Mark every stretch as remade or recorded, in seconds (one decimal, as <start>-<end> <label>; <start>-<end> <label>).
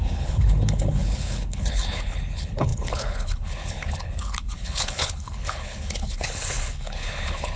0.0-7.6 remade